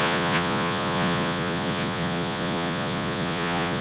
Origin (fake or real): fake